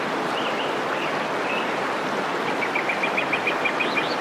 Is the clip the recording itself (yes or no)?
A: yes